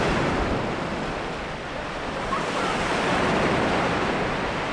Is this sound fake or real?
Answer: real